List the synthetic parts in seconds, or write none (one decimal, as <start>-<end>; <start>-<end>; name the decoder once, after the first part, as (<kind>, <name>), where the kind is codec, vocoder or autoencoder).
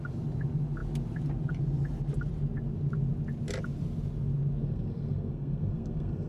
4.6-6.3 (codec, SNAC)